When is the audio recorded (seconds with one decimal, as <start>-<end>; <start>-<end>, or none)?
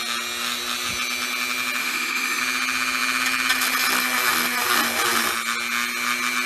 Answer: 0.0-1.8; 2.4-6.5